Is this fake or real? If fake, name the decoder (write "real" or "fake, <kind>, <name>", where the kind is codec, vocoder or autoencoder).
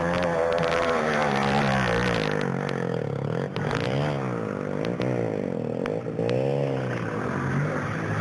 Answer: real